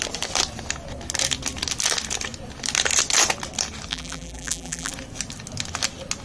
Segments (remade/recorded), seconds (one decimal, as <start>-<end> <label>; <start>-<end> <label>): 0.0-3.9 recorded; 3.9-4.9 remade; 4.9-6.2 recorded